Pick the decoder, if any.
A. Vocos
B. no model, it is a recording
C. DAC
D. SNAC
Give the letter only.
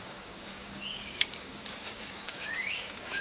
C